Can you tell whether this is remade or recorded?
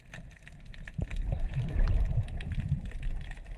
remade